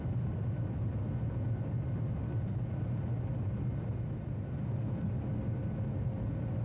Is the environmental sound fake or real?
real